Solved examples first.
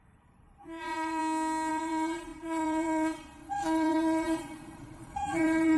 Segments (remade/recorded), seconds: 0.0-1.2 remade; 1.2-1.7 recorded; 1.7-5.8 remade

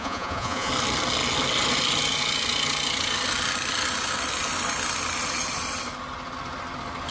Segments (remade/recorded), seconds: 0.0-0.7 remade; 0.7-7.1 recorded

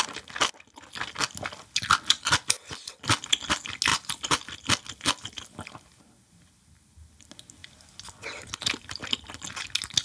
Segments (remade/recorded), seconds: 0.0-10.0 recorded

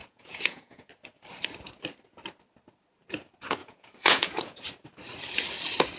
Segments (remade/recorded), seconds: 0.0-0.9 remade; 0.9-3.6 recorded; 3.6-4.6 remade; 4.6-6.0 recorded